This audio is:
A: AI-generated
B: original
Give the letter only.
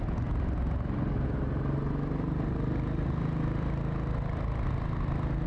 B